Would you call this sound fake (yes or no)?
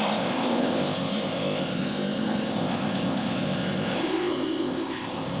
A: yes